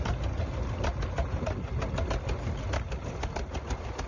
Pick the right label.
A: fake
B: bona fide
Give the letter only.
B